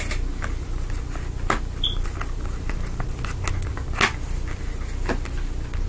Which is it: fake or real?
real